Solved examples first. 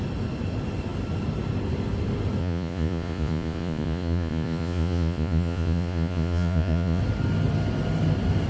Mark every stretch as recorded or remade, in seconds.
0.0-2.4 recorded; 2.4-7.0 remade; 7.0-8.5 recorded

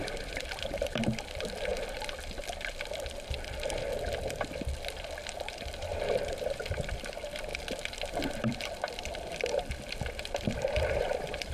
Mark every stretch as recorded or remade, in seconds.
0.0-1.7 remade; 1.7-5.4 recorded; 5.4-7.5 remade; 7.5-8.4 recorded; 8.4-11.5 remade

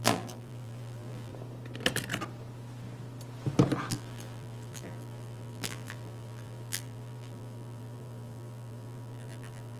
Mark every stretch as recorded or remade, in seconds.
0.0-1.3 remade; 1.3-3.9 recorded; 3.9-9.8 remade

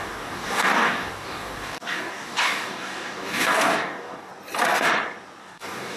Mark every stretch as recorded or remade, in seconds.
0.0-4.3 remade; 4.3-5.4 recorded; 5.4-6.0 remade

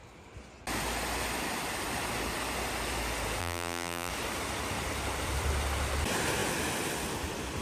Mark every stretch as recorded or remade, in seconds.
0.0-3.4 recorded; 3.4-4.1 remade; 4.1-7.6 recorded

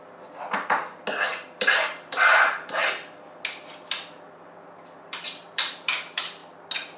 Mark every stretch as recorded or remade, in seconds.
0.0-0.8 remade; 0.8-1.3 recorded; 1.3-2.8 remade; 2.8-3.8 recorded; 3.8-6.4 remade; 6.4-7.0 recorded

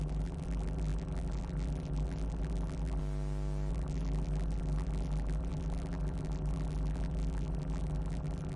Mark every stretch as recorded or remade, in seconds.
0.0-3.0 remade; 3.0-3.7 recorded; 3.7-8.6 remade

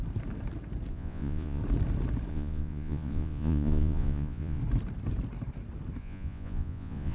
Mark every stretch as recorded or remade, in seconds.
0.0-0.9 recorded; 0.9-1.6 remade; 1.6-2.3 recorded; 2.3-4.6 remade; 4.6-6.0 recorded; 6.0-7.1 remade